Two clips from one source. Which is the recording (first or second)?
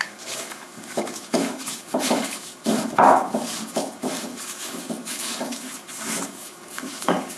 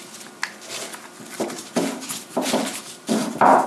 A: second